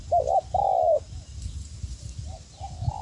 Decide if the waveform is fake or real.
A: real